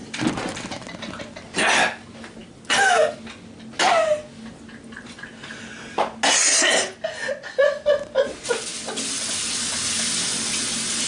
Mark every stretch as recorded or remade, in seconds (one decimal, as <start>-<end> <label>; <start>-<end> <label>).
0.0-0.9 remade; 0.9-11.1 recorded